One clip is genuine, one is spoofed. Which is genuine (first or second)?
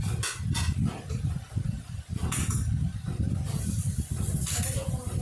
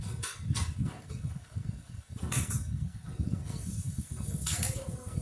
first